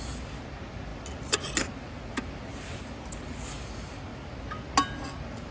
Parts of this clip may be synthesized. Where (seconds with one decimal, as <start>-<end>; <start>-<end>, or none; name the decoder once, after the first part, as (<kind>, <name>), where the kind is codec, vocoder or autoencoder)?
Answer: none

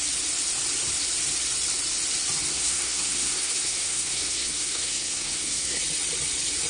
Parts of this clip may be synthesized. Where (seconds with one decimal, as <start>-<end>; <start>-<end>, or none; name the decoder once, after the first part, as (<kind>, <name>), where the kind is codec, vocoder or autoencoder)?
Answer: 2.5-5.8 (codec, SNAC)

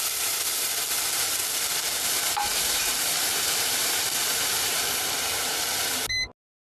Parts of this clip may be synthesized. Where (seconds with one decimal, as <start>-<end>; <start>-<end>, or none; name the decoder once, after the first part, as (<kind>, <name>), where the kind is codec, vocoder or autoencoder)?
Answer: 2.5-5.5 (vocoder, BigVGAN v2)

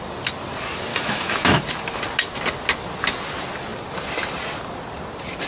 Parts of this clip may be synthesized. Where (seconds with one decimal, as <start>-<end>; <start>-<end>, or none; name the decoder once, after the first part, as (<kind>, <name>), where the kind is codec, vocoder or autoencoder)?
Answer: 0.9-1.7 (autoencoder, DAC-VAE)

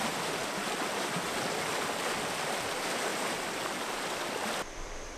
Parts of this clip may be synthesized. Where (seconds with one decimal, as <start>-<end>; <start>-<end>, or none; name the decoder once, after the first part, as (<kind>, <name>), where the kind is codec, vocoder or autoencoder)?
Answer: 0.4-1.2 (vocoder, BigVGAN v2); 3.1-4.1